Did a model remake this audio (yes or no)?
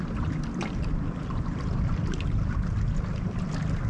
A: no